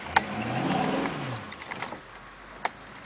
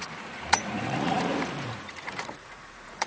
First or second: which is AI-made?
second